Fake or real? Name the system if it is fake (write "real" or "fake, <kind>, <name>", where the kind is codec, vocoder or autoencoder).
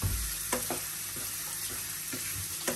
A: real